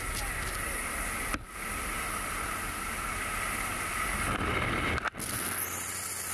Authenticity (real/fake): real